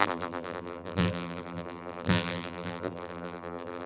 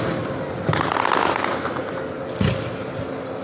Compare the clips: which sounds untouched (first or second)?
second